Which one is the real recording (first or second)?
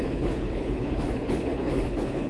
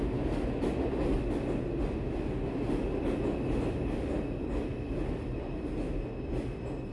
second